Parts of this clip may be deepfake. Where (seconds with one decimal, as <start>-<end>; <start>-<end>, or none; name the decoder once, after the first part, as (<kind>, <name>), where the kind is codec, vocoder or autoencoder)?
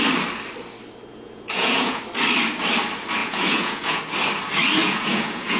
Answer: 1.1-2.0 (vocoder, Vocos); 3.2-4.0; 4.8-5.6